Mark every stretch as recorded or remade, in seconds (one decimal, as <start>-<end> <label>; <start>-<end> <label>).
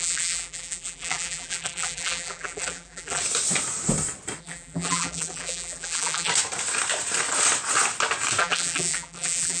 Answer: 0.0-3.2 remade; 3.2-4.4 recorded; 4.4-6.3 remade; 6.3-8.4 recorded; 8.4-9.6 remade